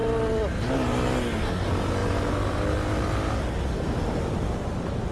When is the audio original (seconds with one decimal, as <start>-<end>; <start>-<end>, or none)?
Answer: 0.0-5.1